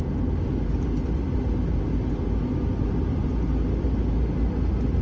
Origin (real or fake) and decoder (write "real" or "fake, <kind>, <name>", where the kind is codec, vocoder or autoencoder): real